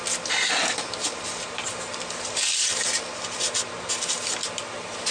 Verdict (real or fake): real